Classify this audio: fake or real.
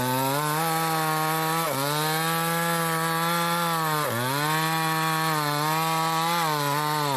real